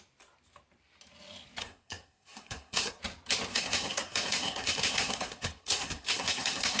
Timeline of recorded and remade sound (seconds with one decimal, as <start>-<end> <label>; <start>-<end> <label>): 0.0-1.6 recorded; 1.6-3.0 remade; 3.0-3.5 recorded; 3.5-6.8 remade